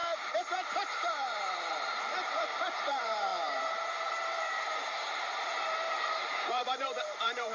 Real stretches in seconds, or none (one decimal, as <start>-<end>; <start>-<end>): 0.0-1.7